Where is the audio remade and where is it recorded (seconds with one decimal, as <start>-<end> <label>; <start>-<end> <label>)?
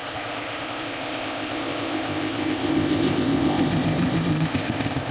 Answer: 0.0-5.1 remade